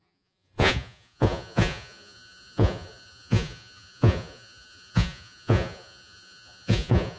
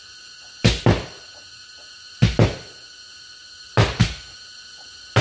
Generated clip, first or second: first